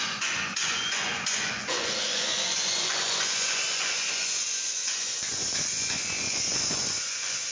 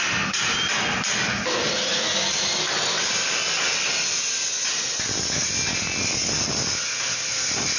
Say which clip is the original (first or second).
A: second